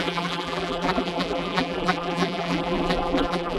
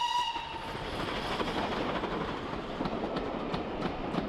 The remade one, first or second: first